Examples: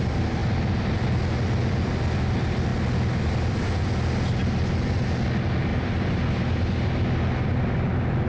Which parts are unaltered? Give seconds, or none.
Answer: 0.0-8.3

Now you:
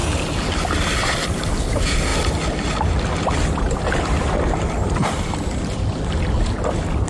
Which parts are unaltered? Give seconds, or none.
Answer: 0.0-7.1

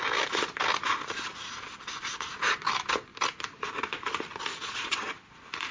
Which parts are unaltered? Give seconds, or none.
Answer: 0.0-4.5; 5.1-5.7

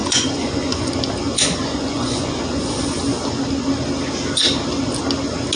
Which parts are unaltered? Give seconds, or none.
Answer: 0.9-1.3; 3.0-5.6

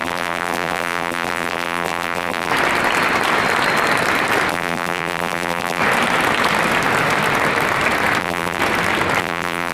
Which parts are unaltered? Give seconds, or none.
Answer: 2.5-4.5; 5.8-8.2; 8.6-9.2

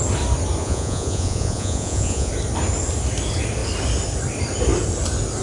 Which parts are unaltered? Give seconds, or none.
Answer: 0.0-0.6; 2.3-5.4

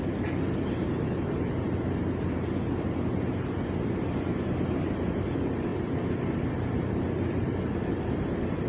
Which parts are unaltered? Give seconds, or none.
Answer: 0.0-5.7